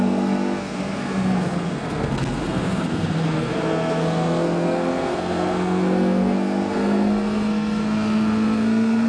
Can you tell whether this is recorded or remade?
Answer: remade